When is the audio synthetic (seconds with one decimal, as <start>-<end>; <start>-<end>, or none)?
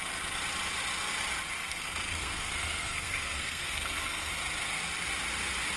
1.6-4.3